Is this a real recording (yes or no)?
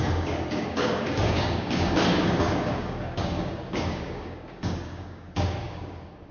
no